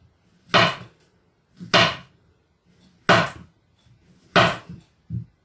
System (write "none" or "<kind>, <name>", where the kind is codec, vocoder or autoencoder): none